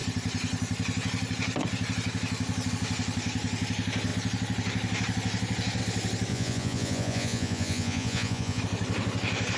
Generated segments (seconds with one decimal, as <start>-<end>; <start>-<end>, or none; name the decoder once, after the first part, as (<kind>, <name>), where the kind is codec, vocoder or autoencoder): 6.3-8.6 (vocoder, Vocos)